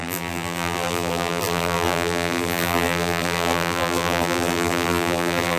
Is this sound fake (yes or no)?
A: yes